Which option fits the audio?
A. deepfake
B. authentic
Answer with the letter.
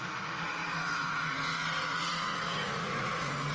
A